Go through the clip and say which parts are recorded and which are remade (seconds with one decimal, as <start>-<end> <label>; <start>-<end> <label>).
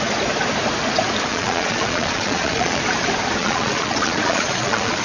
0.0-1.3 recorded; 1.3-2.8 remade; 2.8-3.4 recorded; 3.4-5.0 remade